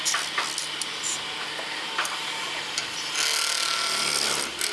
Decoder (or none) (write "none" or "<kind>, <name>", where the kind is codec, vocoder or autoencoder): none